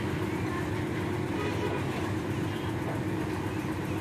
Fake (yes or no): no